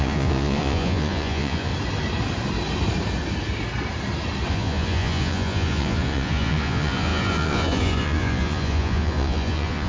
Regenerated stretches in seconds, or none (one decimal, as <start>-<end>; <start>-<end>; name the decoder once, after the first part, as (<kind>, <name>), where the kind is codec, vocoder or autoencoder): 0.0-1.7 (vocoder, Vocos); 4.5-9.9